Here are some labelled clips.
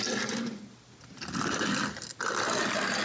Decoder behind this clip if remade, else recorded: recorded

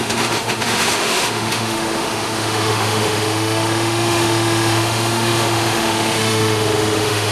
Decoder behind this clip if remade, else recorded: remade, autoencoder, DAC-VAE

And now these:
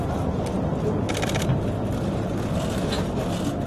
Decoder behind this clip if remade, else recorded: recorded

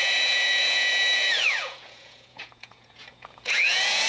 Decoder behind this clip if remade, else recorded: remade, vocoder, Vocos